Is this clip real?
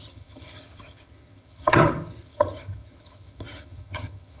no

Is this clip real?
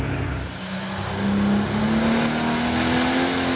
yes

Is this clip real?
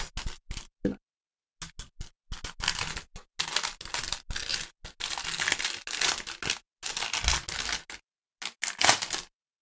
yes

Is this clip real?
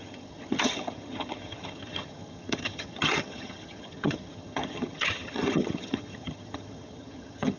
no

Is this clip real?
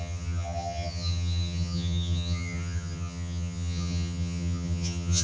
no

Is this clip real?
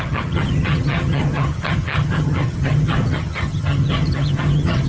no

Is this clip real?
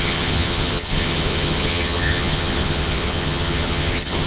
no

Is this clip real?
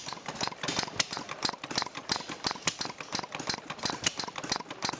yes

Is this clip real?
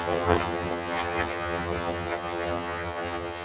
no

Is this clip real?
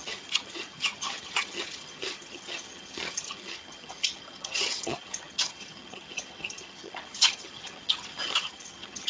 no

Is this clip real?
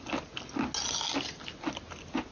yes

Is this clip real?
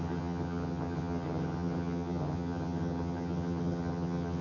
no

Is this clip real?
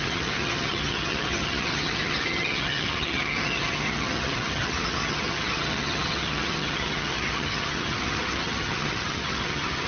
no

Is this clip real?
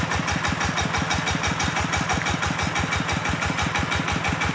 yes